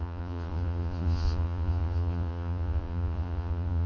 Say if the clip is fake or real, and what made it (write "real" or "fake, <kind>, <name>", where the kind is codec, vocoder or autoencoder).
fake, vocoder, Vocos